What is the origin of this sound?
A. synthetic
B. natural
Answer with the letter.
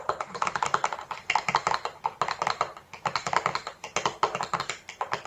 B